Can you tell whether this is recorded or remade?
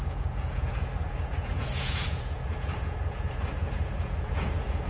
remade